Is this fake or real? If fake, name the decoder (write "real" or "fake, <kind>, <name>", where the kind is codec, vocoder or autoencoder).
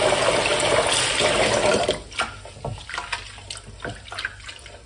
real